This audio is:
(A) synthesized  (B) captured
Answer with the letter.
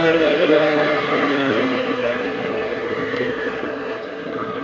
A